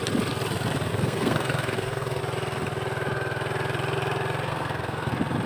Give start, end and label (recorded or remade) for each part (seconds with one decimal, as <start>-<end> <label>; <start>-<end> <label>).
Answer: 0.0-0.9 recorded; 0.9-2.2 remade; 2.2-4.5 recorded; 4.5-5.1 remade; 5.1-5.5 recorded